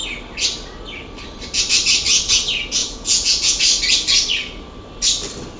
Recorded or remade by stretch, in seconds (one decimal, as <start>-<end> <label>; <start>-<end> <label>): 0.0-2.8 recorded; 2.8-3.6 remade; 3.6-5.6 recorded